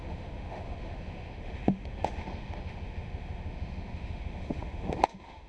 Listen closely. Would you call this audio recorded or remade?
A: remade